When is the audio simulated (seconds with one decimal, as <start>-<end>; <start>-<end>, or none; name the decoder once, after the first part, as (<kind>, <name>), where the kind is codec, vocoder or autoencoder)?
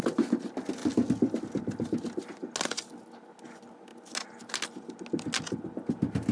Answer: none